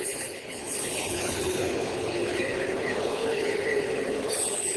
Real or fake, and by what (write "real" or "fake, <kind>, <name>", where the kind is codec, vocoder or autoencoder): fake, codec, HILCodec